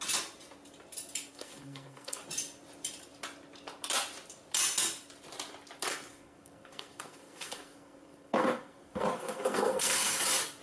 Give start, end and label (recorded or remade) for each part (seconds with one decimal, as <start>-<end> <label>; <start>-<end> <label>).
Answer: 0.0-1.3 recorded; 1.3-2.2 remade; 2.2-5.9 recorded; 5.9-10.2 remade; 10.2-10.6 recorded